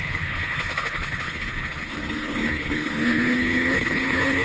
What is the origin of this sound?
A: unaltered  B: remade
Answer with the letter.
B